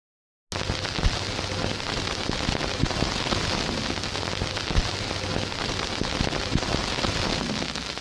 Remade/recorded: recorded